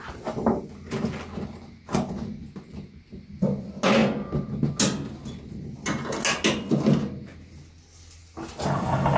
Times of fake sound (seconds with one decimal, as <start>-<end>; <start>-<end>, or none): none